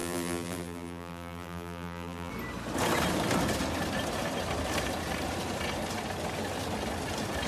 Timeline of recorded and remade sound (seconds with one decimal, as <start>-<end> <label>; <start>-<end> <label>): 0.0-2.3 remade; 2.3-7.5 recorded